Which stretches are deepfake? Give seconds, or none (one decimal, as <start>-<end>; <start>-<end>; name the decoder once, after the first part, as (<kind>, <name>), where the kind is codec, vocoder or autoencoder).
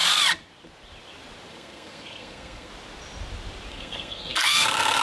1.5-2.7 (codec, SNAC); 3.7-5.0